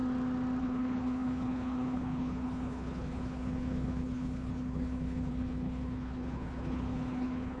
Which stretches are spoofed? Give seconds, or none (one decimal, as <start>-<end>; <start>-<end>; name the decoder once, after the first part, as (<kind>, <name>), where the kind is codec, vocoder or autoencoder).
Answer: 0.6-7.6 (codec, HILCodec)